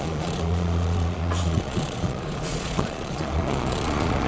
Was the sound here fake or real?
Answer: fake